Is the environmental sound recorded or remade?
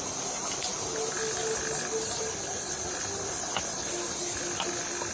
recorded